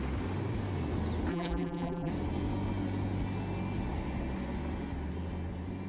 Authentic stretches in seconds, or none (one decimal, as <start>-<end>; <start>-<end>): 0.0-1.3; 2.1-5.9